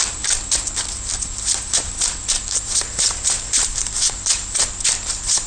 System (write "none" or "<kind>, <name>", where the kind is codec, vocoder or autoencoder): vocoder, BigVGAN v2